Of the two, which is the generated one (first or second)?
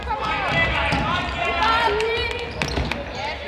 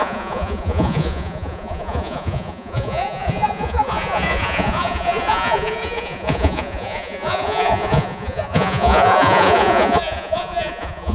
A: second